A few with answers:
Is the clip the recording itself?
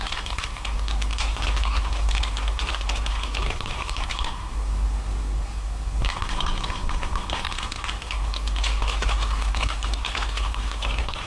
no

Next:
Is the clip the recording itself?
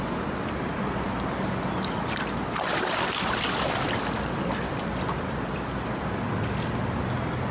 yes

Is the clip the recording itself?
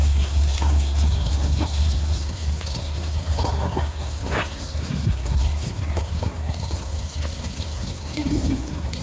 no